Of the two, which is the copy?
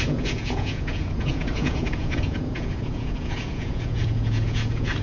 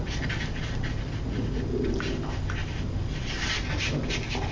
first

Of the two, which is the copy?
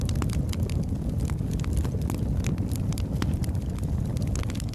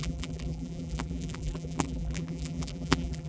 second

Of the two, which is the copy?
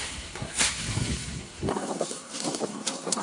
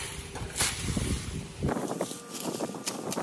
first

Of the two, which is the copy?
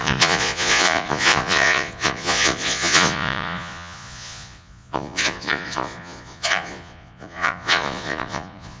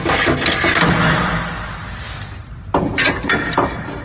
first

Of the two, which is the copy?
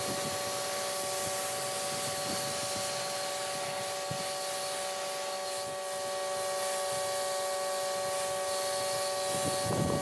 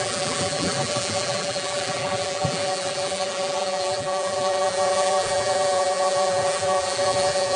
second